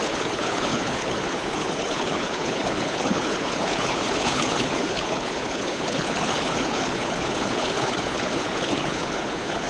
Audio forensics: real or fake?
fake